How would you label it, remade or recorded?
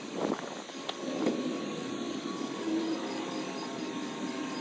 remade